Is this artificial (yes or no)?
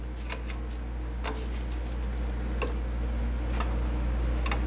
no